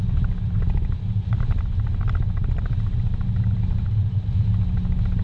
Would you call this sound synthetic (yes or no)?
no